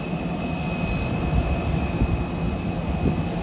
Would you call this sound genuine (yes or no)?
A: yes